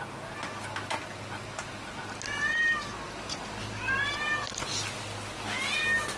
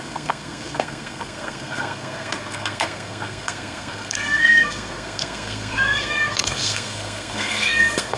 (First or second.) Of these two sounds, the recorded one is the first